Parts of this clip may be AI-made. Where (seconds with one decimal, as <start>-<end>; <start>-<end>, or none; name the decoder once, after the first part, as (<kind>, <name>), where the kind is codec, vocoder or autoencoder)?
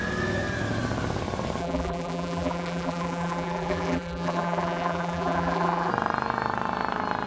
1.6-5.9 (vocoder, BigVGAN v2)